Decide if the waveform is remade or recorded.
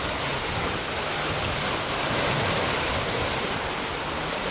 recorded